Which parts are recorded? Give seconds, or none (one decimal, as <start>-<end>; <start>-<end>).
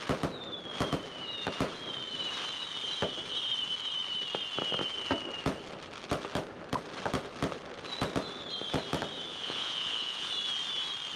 0.0-9.3; 10.3-11.2